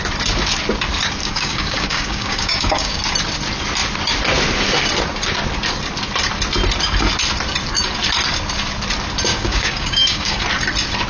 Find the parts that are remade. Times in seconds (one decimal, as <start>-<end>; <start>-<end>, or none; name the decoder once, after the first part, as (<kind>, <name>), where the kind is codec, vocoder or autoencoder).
1.2-3.0 (codec, DAC); 9.3-10.4